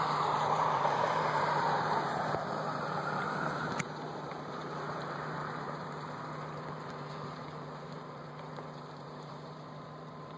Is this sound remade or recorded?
remade